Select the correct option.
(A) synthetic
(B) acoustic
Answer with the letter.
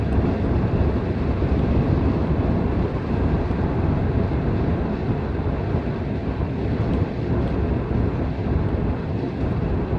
B